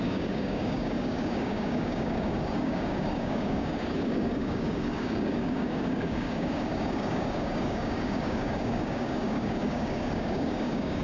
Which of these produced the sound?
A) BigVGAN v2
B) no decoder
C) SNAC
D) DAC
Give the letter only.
D